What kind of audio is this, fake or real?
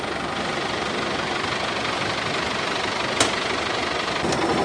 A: real